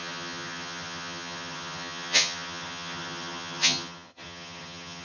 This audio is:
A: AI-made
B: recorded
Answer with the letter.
A